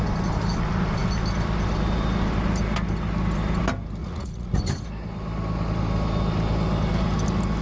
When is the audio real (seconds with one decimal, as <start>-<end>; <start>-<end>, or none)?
0.0-4.0; 4.6-7.6